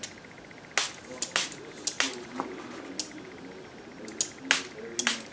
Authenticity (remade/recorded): recorded